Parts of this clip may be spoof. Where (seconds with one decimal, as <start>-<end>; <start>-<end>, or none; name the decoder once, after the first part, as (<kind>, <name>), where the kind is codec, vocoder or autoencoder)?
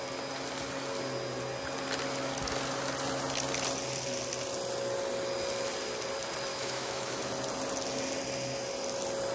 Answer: 6.5-7.3 (autoencoder, DAC-VAE)